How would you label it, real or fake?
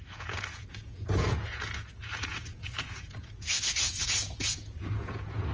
fake